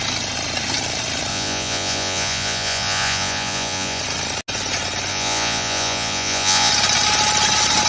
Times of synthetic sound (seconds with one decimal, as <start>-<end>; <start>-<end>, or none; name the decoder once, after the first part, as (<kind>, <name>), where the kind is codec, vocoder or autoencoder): 1.3-4.0 (vocoder, Vocos); 5.1-6.7